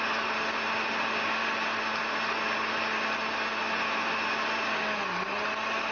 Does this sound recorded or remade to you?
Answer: recorded